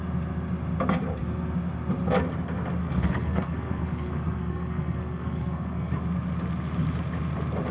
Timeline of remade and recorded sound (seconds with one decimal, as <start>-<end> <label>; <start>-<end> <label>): 0.0-2.8 recorded; 2.8-5.9 remade; 5.9-7.7 recorded